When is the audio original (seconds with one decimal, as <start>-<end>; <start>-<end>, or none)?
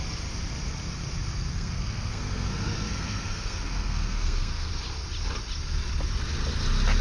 0.0-1.5; 4.7-7.0